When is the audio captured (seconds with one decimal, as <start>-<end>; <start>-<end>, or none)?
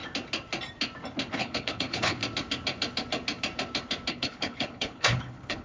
0.0-1.3; 2.2-4.1